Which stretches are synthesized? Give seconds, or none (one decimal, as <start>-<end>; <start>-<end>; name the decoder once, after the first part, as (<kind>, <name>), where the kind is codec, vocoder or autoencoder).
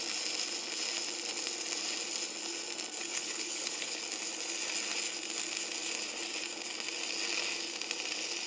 3.0-4.0 (codec, HILCodec)